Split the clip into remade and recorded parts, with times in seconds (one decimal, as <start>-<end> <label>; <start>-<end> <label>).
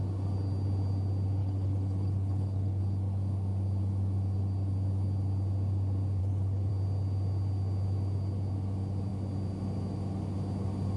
0.0-1.4 recorded; 1.4-2.8 remade; 2.8-6.2 recorded; 6.2-6.7 remade; 6.7-11.0 recorded